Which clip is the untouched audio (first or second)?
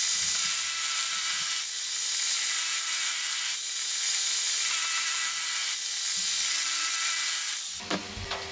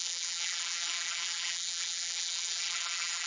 first